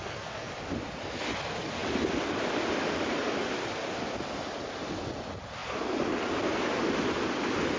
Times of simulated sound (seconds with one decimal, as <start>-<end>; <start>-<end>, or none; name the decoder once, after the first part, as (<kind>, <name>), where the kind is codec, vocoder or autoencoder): 0.0-0.5 (codec, SNAC)